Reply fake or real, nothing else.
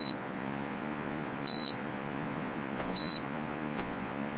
fake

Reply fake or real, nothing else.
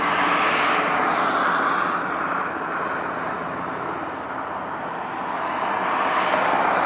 real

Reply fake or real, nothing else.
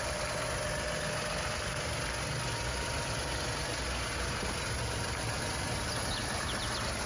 real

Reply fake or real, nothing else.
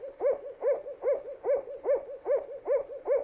fake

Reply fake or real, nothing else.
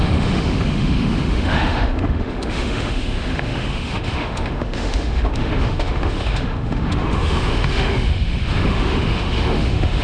fake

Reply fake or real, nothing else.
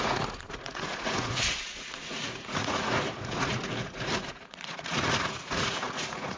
fake